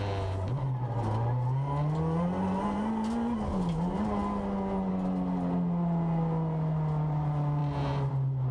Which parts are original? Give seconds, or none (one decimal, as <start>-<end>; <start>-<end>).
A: 0.0-8.5